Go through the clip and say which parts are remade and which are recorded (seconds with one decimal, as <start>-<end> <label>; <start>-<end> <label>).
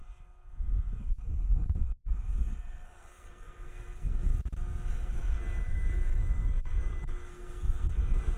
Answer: 0.0-1.0 recorded; 1.0-4.3 remade; 4.3-4.9 recorded; 4.9-8.4 remade